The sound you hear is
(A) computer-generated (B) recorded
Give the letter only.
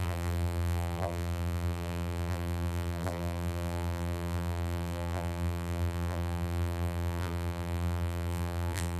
A